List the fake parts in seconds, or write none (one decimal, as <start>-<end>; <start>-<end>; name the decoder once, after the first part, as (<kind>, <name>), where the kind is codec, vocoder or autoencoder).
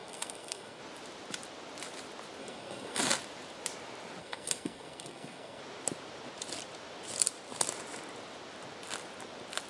0.0-0.8 (codec, SNAC); 2.4-3.0; 4.2-5.6